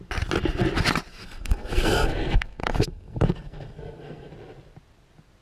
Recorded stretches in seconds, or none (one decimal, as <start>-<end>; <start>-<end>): 0.0-1.1; 4.3-5.4